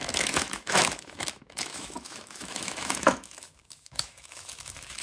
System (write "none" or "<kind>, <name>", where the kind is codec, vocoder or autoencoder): autoencoder, DAC-VAE